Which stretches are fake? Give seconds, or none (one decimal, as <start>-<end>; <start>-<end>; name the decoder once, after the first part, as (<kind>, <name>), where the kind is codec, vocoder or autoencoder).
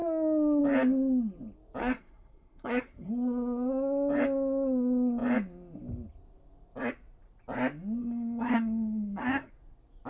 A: 1.8-3.1 (codec, SNAC); 8.0-9.5